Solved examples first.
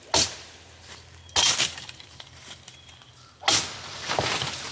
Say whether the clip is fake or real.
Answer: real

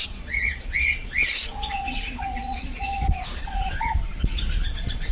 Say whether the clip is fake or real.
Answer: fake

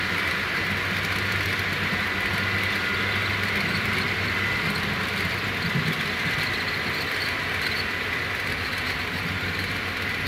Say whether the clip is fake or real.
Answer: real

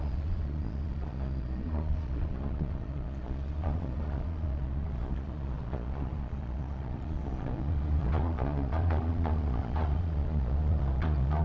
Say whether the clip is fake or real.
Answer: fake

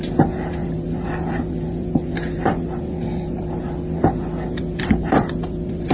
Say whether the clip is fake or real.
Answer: real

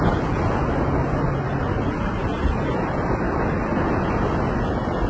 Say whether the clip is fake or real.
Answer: real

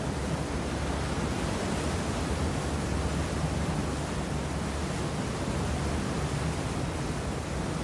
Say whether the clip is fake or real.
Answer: real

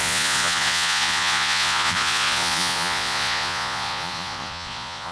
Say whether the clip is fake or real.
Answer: fake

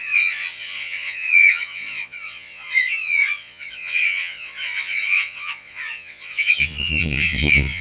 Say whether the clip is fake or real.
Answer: fake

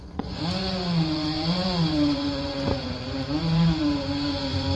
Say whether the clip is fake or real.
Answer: fake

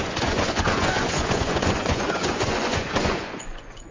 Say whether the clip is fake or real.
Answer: fake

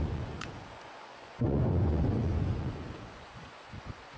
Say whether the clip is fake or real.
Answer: fake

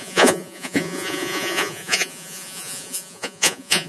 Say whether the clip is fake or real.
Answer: fake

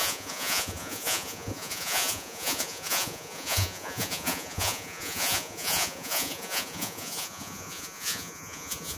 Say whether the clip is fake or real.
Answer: fake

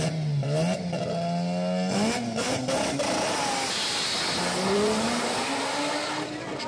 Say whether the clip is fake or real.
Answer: real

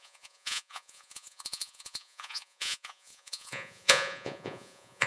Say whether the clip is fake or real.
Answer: fake